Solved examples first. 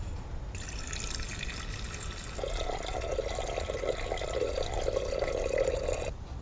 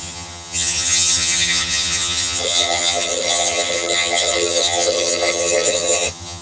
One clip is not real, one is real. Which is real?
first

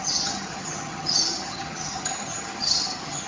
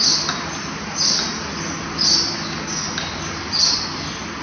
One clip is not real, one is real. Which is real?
second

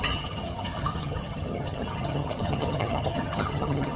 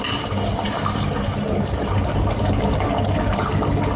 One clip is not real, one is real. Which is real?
second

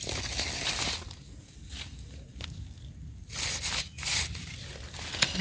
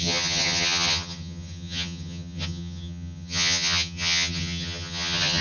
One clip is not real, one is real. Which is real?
first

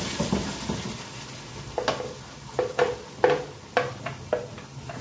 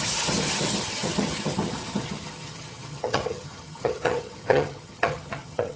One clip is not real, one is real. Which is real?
first